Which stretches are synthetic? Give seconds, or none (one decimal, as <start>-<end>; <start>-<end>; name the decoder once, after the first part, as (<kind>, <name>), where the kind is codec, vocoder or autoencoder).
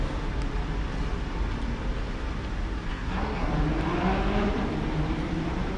2.9-3.5 (codec, SNAC)